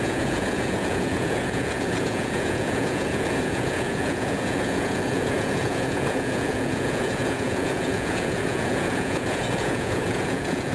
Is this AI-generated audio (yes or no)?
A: yes